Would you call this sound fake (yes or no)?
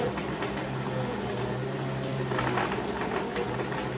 no